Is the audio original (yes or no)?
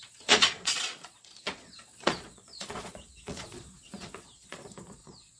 no